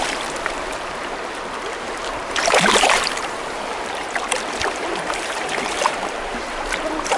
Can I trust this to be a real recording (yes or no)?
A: no